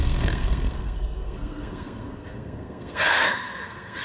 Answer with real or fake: fake